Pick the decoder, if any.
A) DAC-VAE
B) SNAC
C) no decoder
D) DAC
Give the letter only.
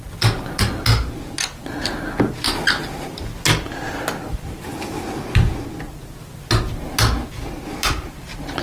C